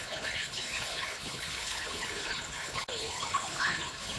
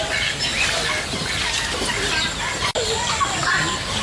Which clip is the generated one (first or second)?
first